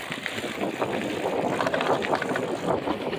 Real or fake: real